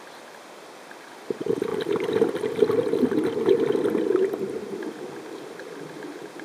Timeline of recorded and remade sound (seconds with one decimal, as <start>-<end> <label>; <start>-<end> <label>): 0.0-6.4 recorded